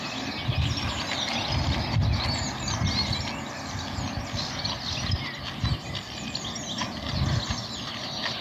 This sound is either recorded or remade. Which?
recorded